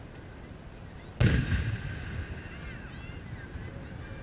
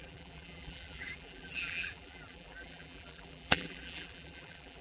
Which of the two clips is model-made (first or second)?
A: second